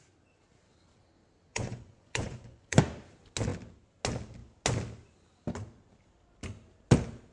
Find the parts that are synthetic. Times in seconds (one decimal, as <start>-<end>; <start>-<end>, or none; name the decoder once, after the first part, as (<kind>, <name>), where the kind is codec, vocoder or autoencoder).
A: 1.5-2.8 (vocoder, Vocos)